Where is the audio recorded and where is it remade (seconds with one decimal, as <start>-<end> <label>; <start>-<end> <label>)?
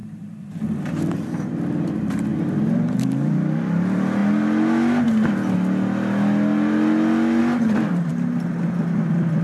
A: 0.0-4.2 remade; 4.2-7.4 recorded; 7.4-9.4 remade